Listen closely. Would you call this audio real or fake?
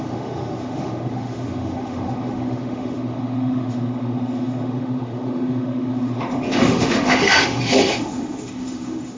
fake